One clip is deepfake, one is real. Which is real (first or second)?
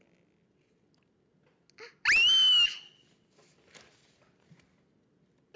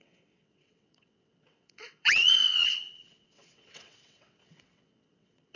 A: first